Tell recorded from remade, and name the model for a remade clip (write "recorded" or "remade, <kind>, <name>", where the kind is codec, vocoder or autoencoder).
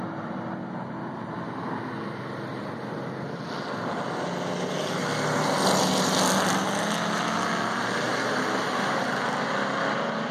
recorded